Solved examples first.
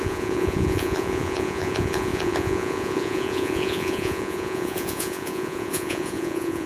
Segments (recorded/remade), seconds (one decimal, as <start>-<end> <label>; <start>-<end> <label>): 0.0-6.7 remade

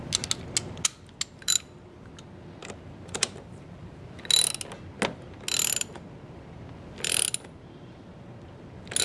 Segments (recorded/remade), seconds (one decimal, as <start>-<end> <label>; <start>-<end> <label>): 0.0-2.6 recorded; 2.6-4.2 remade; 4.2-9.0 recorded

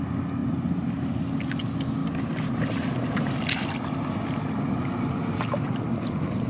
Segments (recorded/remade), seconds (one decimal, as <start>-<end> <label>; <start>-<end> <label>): 0.0-2.0 recorded; 2.0-3.3 remade; 3.3-6.5 recorded

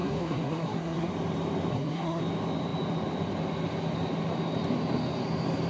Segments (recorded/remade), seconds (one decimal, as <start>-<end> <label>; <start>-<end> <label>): 0.0-1.1 remade; 1.1-1.7 recorded; 1.7-2.2 remade; 2.2-5.7 recorded